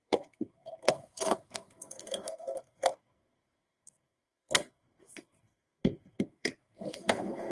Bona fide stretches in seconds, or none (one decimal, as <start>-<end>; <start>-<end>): none